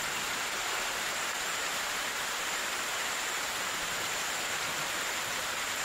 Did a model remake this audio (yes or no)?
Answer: yes